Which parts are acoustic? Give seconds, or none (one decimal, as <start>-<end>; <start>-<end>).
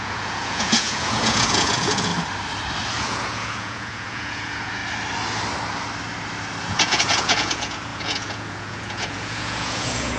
2.1-3.0; 4.8-6.6